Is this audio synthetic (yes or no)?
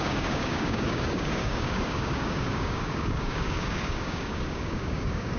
yes